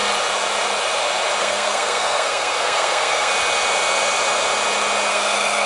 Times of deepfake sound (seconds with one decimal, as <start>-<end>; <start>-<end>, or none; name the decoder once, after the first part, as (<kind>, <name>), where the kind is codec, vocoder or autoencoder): 1.4-3.3 (codec, SNAC); 5.1-5.7